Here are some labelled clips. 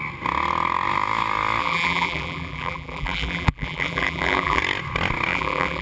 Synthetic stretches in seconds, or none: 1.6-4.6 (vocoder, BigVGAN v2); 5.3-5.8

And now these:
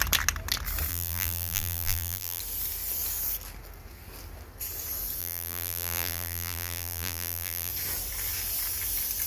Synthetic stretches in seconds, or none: 0.9-2.4 (vocoder, BigVGAN v2); 5.2-7.7

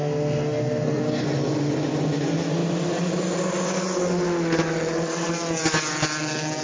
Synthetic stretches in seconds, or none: 0.0-1.0 (codec, SNAC)

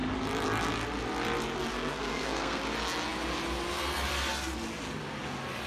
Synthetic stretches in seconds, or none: 1.7-2.6 (codec, SNAC)